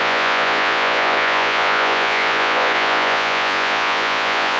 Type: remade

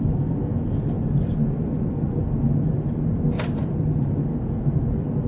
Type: recorded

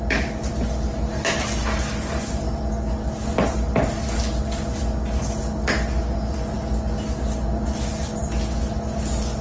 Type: recorded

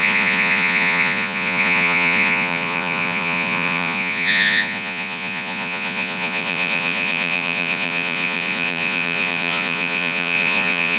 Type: remade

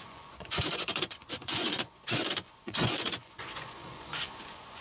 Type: remade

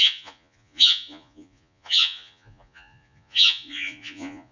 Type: remade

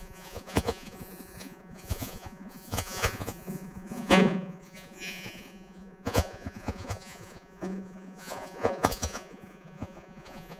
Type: remade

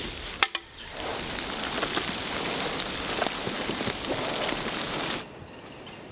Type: recorded